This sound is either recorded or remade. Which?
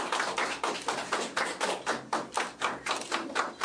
recorded